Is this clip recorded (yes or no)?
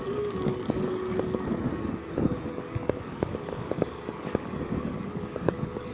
no